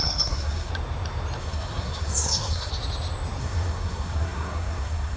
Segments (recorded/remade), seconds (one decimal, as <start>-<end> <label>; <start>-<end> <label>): 0.0-0.7 remade; 0.7-1.4 recorded; 1.4-2.7 remade; 2.7-3.4 recorded; 3.4-5.2 remade